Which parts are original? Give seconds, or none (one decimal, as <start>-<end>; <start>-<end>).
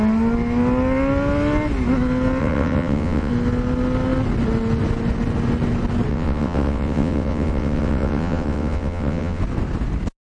0.0-2.4; 3.3-6.1; 9.4-10.3